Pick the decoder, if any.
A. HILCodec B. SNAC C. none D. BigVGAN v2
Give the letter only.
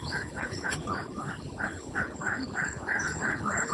A